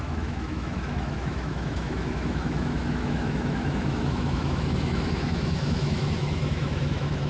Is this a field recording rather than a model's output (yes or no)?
no